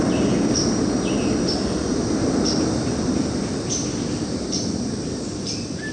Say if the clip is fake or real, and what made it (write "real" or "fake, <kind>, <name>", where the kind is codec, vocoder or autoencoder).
fake, vocoder, BigVGAN v2